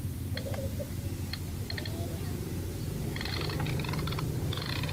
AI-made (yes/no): no